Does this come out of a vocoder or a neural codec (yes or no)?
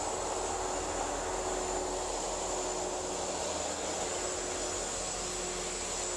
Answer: no